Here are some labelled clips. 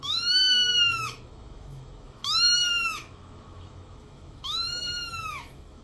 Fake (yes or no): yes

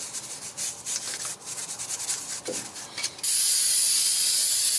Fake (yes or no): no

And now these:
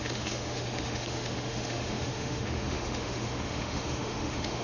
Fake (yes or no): yes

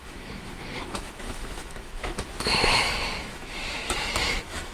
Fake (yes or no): yes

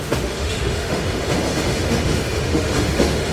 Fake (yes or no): yes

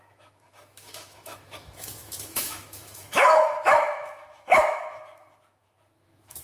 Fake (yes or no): yes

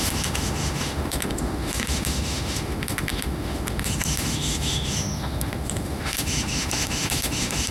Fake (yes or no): yes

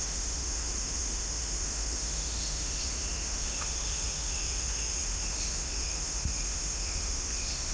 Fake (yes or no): yes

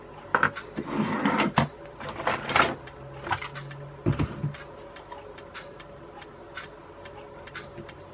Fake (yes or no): no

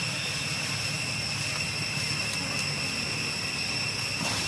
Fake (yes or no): no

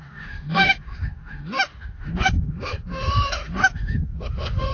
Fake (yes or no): yes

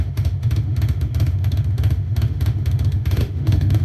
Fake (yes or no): yes